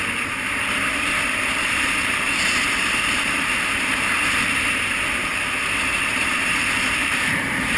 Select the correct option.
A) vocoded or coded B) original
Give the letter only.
A